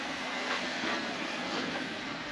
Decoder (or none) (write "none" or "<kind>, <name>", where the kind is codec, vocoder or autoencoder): codec, SNAC